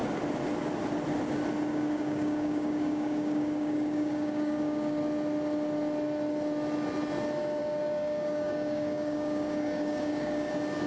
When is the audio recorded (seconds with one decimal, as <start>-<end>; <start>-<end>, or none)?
0.0-1.7; 5.0-7.6; 10.5-10.9